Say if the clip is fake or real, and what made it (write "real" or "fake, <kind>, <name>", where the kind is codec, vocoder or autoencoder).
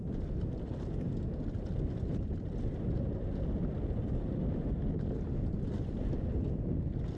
real